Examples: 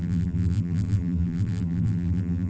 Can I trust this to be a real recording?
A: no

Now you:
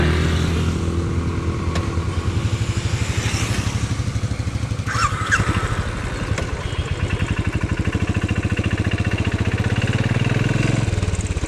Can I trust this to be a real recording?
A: yes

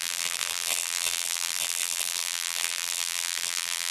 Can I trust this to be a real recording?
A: no